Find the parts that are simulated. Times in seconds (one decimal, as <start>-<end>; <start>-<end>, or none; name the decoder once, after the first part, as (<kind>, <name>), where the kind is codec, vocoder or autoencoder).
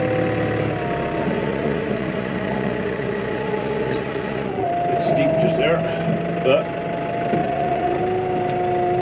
1.2-4.7 (vocoder, Vocos); 7.4-8.0